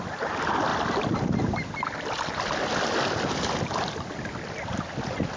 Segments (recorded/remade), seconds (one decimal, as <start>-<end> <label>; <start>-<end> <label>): 0.0-5.4 recorded